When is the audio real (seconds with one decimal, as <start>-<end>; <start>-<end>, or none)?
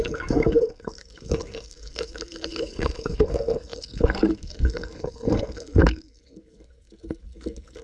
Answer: none